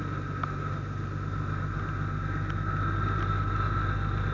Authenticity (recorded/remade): recorded